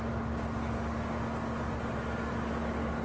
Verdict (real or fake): real